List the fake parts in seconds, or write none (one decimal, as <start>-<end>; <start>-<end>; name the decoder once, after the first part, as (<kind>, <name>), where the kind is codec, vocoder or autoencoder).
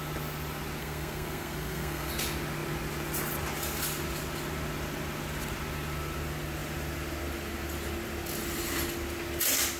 0.8-2.1 (codec, SNAC)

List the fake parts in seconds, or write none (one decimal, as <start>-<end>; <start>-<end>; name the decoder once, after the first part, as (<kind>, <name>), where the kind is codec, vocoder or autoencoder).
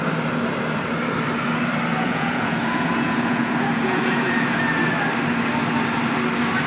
1.9-4.6 (vocoder, Vocos)